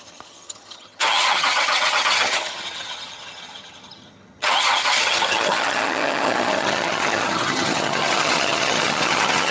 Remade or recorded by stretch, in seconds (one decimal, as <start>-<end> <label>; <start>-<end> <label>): 0.0-9.5 remade

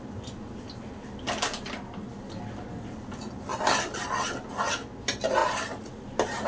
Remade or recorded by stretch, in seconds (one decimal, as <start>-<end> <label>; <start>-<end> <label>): 0.0-3.5 recorded; 3.5-4.0 remade; 4.0-5.4 recorded; 5.4-5.9 remade; 5.9-6.5 recorded

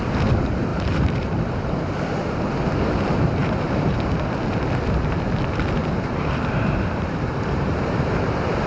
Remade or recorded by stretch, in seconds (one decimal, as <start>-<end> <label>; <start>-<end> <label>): 0.0-0.7 recorded; 0.7-1.5 remade; 1.5-3.4 recorded; 3.4-4.0 remade; 4.0-5.8 recorded; 5.8-8.2 remade; 8.2-8.7 recorded